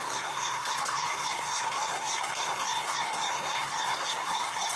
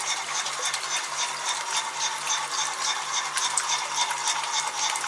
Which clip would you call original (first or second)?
second